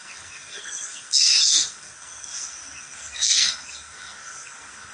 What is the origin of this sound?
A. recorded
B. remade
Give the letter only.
B